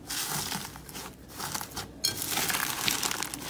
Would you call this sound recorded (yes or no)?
yes